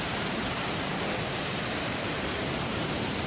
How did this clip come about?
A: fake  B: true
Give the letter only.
A